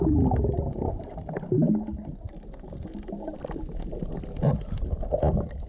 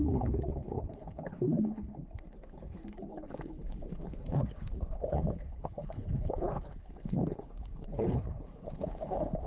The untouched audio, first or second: first